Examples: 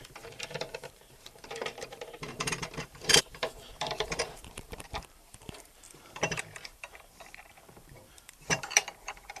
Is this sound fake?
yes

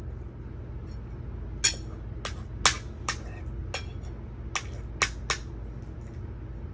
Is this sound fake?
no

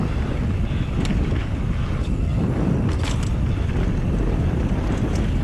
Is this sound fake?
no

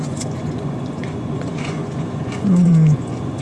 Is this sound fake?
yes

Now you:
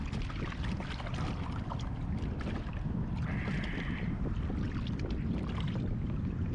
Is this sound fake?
no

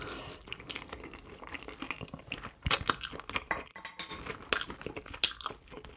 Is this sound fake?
no